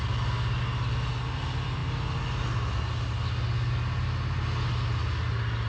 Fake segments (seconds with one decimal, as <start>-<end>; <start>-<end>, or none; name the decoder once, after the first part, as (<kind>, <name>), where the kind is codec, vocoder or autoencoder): none